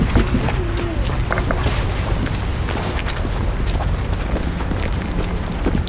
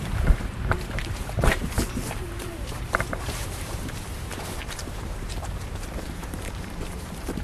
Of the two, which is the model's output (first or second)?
second